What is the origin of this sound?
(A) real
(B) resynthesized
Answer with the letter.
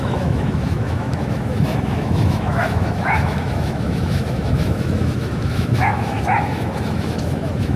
B